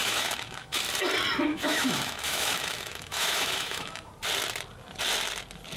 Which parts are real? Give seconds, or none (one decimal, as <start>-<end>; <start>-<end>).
0.8-1.5; 4.1-5.8